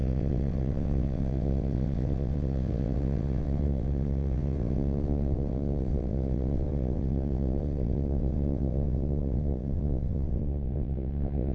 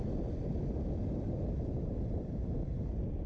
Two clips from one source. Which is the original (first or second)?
second